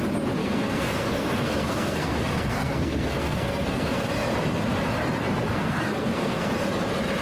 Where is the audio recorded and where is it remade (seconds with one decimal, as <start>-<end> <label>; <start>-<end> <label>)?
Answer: 0.0-0.4 recorded; 0.4-4.1 remade; 4.1-5.5 recorded; 5.5-6.5 remade; 6.5-7.2 recorded